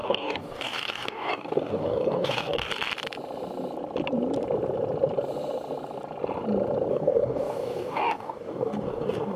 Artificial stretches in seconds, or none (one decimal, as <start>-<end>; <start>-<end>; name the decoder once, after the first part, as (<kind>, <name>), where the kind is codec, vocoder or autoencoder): 0.0-2.7 (codec, DAC); 6.9-9.4